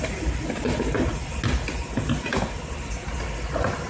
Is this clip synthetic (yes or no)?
no